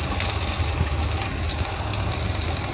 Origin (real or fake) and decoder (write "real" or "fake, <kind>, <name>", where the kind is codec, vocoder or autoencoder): real